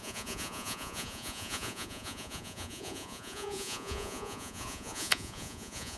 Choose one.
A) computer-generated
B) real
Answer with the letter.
A